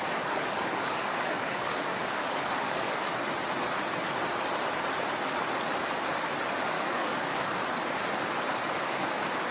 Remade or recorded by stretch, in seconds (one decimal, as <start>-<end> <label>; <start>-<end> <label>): 0.0-3.1 remade; 3.1-6.5 recorded; 6.5-7.6 remade; 7.6-8.7 recorded; 8.7-9.5 remade